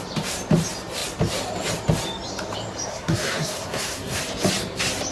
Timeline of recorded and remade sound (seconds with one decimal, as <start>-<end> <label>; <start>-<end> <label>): 0.0-2.9 recorded; 2.9-4.2 remade; 4.2-5.1 recorded